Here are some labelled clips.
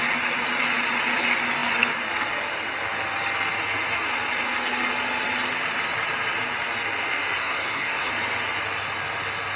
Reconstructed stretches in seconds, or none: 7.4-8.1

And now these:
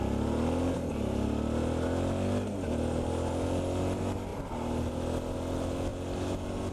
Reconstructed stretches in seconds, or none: none

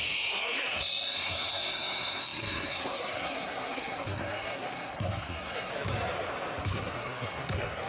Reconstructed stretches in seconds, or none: 0.0-5.7; 6.6-7.9

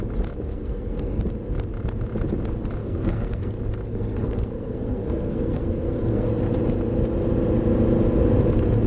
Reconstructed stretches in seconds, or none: 0.5-1.2; 2.8-3.5; 3.9-6.3

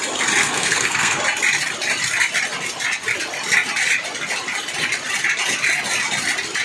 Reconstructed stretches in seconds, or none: 0.4-1.2

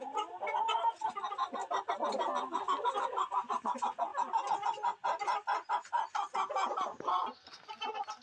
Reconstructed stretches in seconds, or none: none

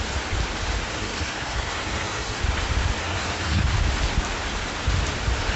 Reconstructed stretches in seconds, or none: 0.9-2.4; 3.0-3.6